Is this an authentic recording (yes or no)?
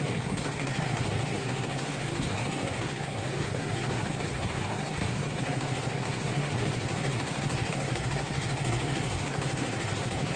no